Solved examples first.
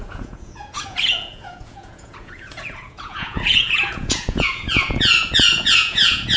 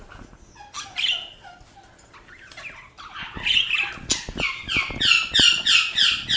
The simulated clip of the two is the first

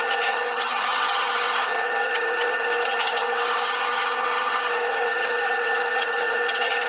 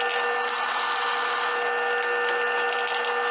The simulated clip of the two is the first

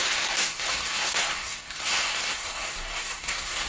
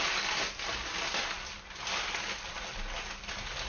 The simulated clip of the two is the first